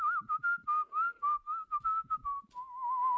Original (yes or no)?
yes